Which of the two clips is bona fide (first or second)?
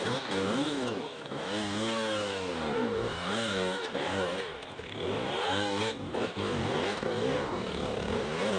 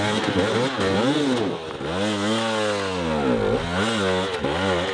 second